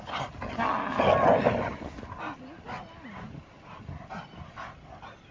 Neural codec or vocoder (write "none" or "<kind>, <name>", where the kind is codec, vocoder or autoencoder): none